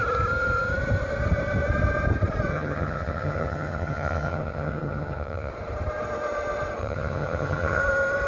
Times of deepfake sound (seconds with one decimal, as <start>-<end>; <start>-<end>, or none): 2.5-5.5; 6.8-7.8